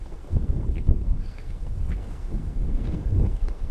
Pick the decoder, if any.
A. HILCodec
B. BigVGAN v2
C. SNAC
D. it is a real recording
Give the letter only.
C